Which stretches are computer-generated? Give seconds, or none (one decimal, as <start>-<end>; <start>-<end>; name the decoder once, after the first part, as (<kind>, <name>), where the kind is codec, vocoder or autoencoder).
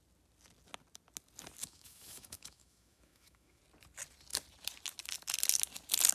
1.6-3.6 (autoencoder, DAC-VAE)